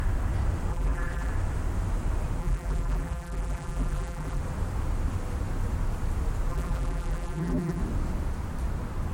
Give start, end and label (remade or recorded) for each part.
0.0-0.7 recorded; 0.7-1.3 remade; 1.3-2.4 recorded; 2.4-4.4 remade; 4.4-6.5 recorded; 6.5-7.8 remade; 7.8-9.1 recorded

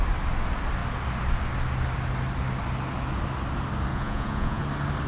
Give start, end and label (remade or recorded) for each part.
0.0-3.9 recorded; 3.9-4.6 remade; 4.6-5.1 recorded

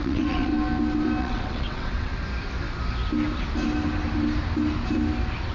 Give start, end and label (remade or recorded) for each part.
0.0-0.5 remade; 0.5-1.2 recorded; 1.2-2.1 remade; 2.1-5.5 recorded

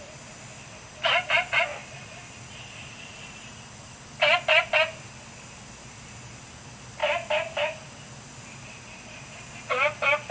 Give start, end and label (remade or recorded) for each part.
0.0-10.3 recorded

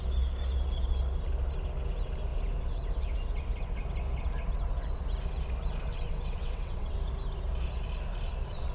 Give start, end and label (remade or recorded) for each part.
0.0-5.9 recorded; 5.9-7.0 remade; 7.0-8.7 recorded

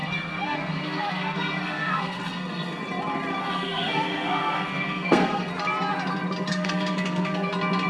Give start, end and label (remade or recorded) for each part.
0.0-2.8 remade; 2.8-3.4 recorded; 3.4-5.5 remade; 5.5-6.5 recorded; 6.5-7.5 remade; 7.5-7.9 recorded

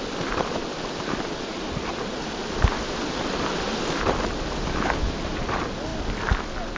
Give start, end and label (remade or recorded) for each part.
0.0-1.5 remade; 1.5-4.3 recorded; 4.3-5.9 remade; 5.9-6.8 recorded